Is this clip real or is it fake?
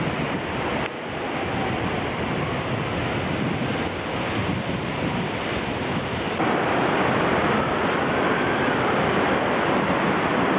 real